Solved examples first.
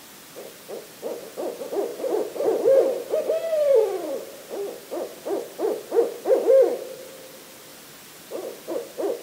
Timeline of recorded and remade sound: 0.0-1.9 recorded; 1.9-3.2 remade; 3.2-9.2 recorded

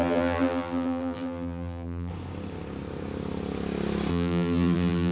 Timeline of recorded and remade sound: 0.0-2.1 remade; 2.1-4.1 recorded; 4.1-5.1 remade

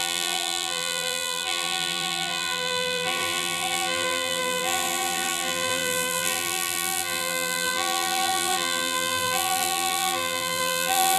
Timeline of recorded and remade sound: 0.0-11.2 remade

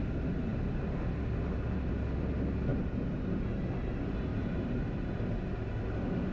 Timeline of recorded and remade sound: 0.0-0.5 recorded; 0.5-1.1 remade; 1.1-2.7 recorded; 2.7-3.4 remade; 3.4-4.3 recorded; 4.3-4.8 remade; 4.8-6.3 recorded